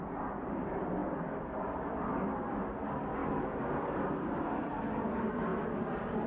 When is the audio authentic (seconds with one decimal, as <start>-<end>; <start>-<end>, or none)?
0.0-6.3